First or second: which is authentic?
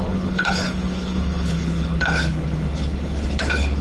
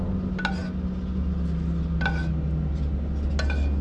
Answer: second